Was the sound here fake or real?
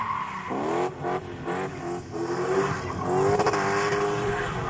real